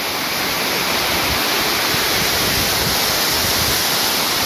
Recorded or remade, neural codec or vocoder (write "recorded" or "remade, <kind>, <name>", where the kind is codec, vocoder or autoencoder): recorded